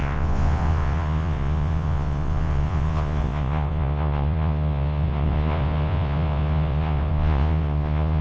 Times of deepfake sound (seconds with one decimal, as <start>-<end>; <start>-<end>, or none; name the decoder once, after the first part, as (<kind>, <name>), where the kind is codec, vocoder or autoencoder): 0.0-8.2 (vocoder, Vocos)

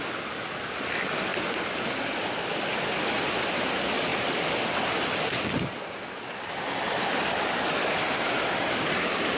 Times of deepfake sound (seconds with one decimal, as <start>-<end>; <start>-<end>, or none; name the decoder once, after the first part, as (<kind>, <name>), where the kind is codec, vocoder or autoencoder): none

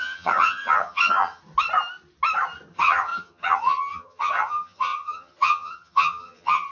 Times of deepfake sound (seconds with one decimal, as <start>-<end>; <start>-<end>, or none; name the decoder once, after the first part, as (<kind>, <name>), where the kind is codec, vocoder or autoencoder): 0.0-1.4 (vocoder, HiFi-GAN); 2.7-6.7

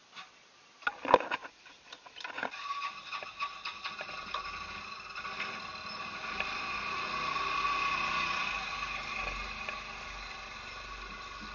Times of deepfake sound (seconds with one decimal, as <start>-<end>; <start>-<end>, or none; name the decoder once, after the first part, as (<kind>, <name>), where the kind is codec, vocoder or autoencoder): none